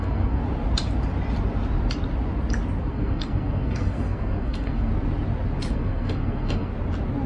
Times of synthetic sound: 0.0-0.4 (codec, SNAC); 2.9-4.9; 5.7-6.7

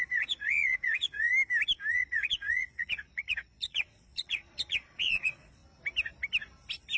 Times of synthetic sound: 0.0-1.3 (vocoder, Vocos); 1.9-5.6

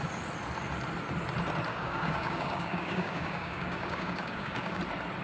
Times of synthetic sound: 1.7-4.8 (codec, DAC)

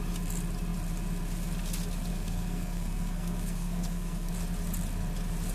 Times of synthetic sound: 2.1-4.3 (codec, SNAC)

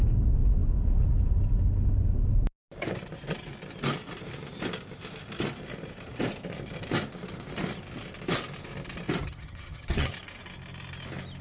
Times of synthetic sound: 9.2-10.1 (vocoder, HiFi-GAN)